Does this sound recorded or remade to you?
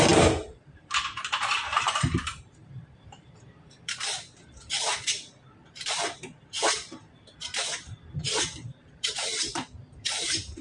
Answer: remade